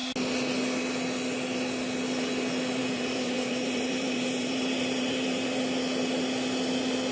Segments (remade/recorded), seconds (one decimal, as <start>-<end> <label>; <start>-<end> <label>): 0.0-2.8 recorded; 2.8-5.6 remade; 5.6-7.1 recorded